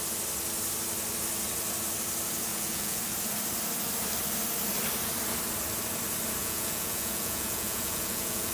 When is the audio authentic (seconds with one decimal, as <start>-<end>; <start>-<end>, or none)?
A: 0.0-2.5; 3.0-6.4